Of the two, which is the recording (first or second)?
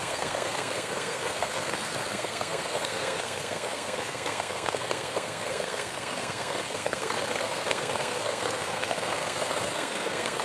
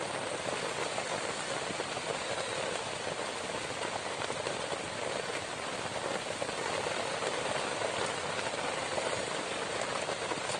second